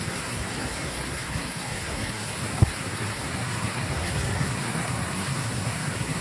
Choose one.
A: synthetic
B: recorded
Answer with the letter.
A